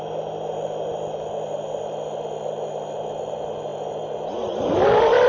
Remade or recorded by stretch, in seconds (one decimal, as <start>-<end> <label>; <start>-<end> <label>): 0.0-5.3 recorded

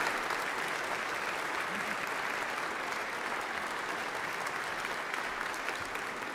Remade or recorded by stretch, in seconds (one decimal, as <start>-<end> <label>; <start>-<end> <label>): 0.0-6.3 recorded